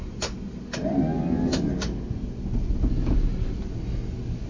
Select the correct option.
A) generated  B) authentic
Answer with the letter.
B